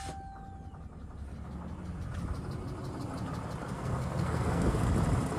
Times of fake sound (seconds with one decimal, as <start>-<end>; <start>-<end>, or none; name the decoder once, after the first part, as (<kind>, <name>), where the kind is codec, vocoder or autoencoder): 3.6-4.9 (codec, SNAC)